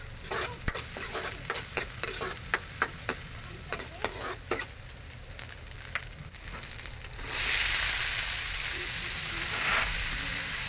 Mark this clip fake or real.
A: real